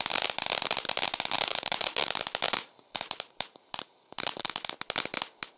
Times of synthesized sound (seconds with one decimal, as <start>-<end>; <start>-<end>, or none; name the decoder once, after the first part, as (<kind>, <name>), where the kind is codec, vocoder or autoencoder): 1.5-2.1 (vocoder, BigVGAN v2); 2.6-4.7